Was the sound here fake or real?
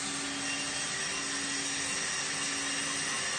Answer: real